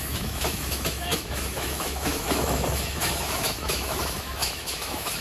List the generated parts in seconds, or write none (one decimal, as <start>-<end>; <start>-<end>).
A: 0.0-5.2